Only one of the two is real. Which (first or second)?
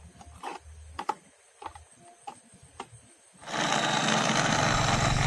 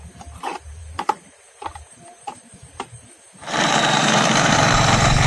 first